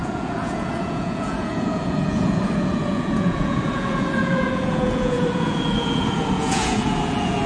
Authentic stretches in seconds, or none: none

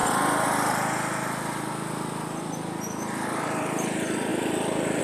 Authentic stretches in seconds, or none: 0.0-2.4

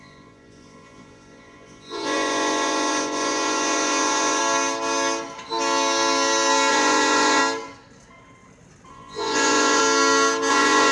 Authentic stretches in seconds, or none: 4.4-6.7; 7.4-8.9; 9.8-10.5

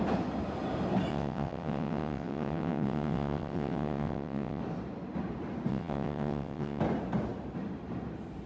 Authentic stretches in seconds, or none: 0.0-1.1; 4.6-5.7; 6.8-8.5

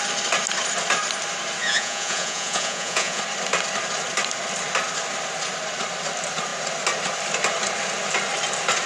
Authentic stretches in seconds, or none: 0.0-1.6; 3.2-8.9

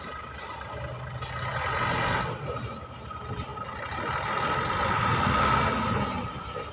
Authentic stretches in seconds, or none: 0.0-6.7